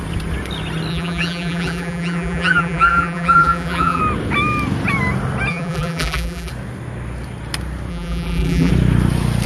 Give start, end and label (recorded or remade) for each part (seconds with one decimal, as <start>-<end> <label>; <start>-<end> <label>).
0.0-0.9 recorded; 0.9-4.0 remade; 4.0-5.5 recorded; 5.5-6.5 remade; 6.5-7.9 recorded; 7.9-8.7 remade; 8.7-9.5 recorded

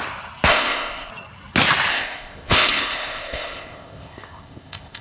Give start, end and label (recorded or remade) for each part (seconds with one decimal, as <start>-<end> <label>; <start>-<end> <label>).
0.0-0.5 recorded; 0.5-1.1 remade; 1.1-1.9 recorded; 1.9-5.0 remade

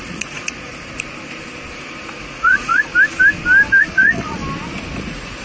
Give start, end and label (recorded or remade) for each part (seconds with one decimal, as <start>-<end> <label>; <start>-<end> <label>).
0.0-0.7 remade; 0.7-2.2 recorded; 2.2-2.9 remade; 2.9-3.8 recorded; 3.8-4.4 remade; 4.4-5.0 recorded; 5.0-5.4 remade